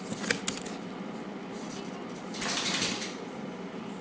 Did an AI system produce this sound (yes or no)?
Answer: yes